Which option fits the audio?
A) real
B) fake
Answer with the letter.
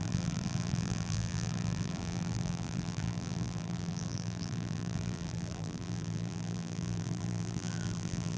B